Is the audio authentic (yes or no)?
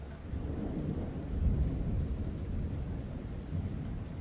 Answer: yes